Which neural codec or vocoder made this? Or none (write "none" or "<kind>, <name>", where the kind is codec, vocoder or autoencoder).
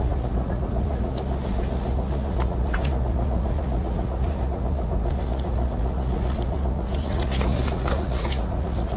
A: vocoder, Vocos